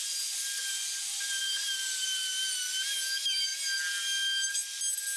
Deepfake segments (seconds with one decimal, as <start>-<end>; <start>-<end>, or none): none